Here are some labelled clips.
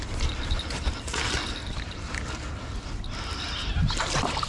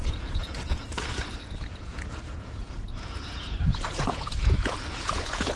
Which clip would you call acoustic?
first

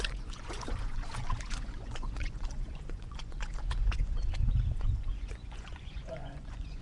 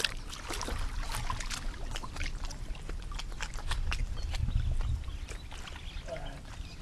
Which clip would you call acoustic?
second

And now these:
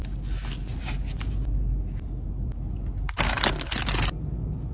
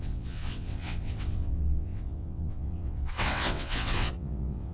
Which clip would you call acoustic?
first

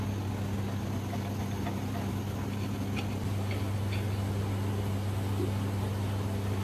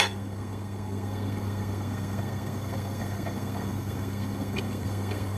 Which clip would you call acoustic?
first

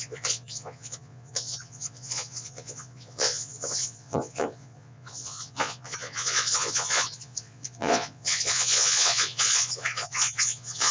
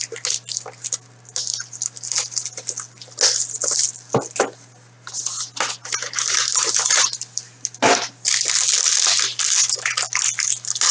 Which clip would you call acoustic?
second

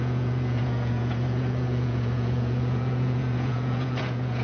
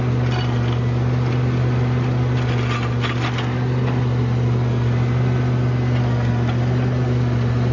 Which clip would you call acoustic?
second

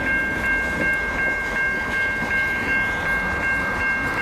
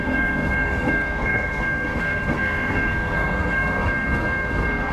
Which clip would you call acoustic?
first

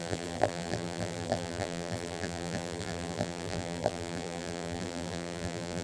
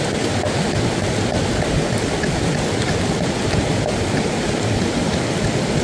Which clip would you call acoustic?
second